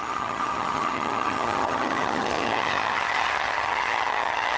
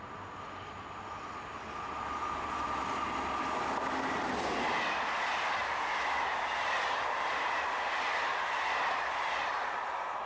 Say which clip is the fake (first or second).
first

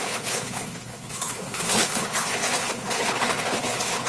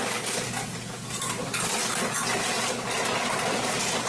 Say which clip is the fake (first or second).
first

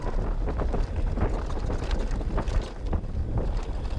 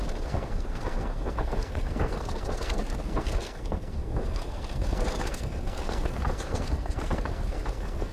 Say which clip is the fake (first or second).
second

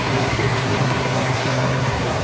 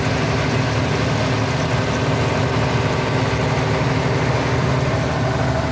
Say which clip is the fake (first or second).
first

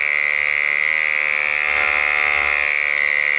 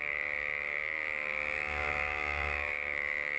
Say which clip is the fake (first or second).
second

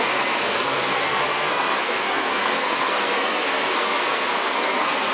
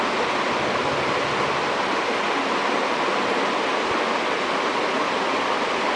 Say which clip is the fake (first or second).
first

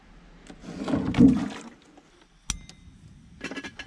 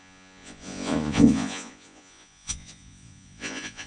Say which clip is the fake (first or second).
second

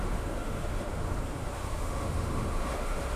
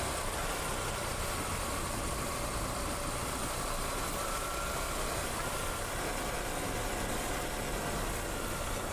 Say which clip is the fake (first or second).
first